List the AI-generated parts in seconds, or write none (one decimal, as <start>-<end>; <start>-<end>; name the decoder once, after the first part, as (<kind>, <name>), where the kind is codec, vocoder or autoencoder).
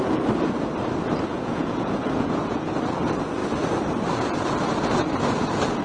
1.3-2.7 (vocoder, Vocos)